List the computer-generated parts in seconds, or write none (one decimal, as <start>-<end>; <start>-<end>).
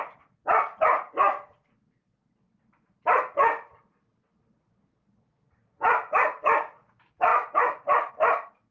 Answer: none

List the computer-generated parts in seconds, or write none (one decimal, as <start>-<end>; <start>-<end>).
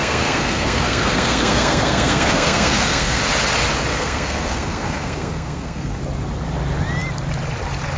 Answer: 0.0-3.2; 3.9-6.0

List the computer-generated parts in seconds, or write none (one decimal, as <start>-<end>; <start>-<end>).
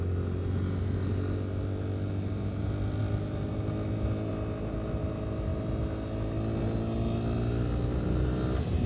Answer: none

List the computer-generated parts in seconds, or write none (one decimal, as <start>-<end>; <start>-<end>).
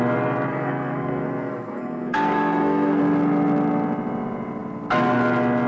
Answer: 0.5-3.0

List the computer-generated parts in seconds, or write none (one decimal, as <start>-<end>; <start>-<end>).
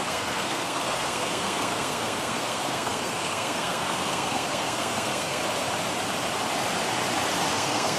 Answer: 0.0-5.4; 7.5-8.0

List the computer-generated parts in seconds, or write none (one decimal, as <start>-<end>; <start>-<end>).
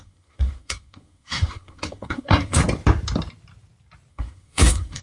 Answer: 0.0-2.6; 4.1-5.0